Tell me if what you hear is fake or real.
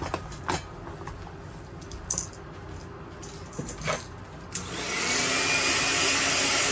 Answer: real